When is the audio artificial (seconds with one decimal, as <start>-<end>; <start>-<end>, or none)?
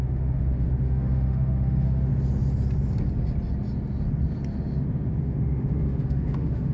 0.0-2.1; 5.2-6.7